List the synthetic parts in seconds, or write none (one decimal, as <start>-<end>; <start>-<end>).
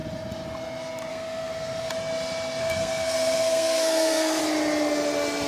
1.1-1.9; 2.6-4.4